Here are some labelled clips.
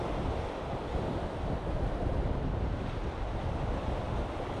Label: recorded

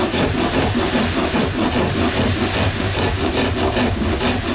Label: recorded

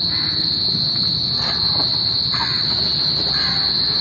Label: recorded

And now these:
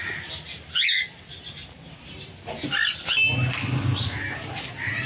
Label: recorded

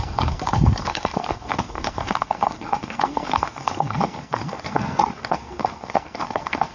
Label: remade